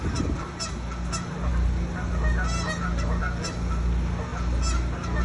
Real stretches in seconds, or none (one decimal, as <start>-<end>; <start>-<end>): 0.0-5.2